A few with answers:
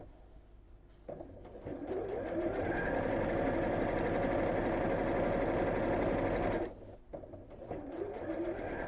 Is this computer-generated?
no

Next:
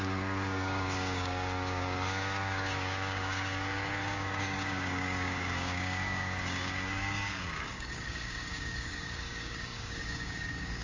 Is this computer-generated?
yes